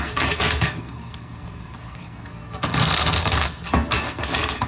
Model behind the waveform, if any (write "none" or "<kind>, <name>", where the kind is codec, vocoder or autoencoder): codec, SNAC